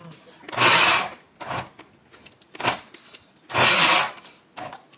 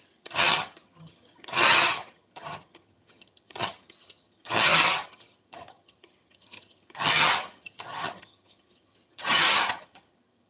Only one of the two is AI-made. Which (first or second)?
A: second